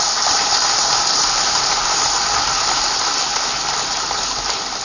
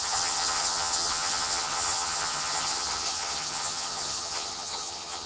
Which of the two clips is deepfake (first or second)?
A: second